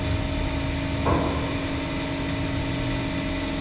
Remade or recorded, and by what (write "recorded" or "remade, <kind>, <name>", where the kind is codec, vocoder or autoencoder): recorded